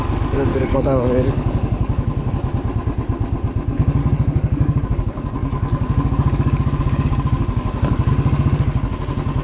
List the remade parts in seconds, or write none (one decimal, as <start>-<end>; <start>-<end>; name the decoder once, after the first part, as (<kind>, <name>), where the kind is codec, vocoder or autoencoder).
0.5-2.3 (codec, DAC); 4.0-8.1